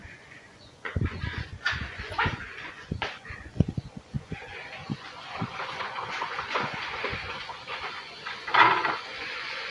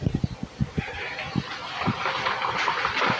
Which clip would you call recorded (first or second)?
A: second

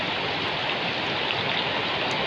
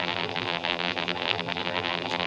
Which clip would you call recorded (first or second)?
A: first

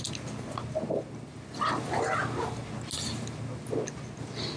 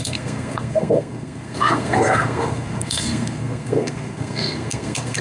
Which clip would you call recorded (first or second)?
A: first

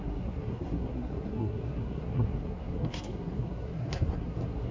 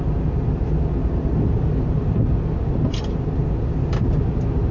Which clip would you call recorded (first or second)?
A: second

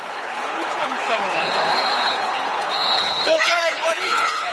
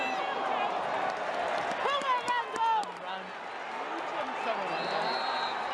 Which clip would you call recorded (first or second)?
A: second